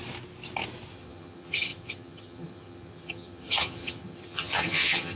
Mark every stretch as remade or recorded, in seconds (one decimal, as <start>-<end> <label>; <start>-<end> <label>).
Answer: 0.0-0.9 recorded; 0.9-5.2 remade